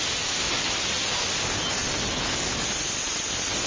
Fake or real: real